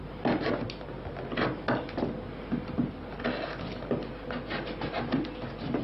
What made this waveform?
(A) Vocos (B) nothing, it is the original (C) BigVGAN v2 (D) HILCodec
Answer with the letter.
B